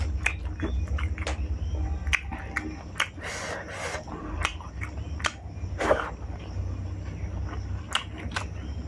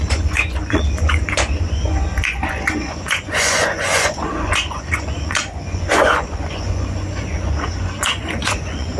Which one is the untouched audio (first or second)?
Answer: first